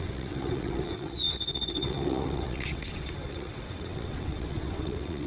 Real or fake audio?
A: fake